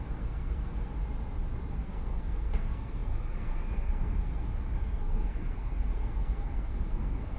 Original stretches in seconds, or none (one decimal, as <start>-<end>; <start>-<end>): 0.9-1.7